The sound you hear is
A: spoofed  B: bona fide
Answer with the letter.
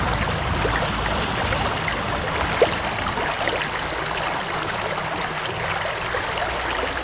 B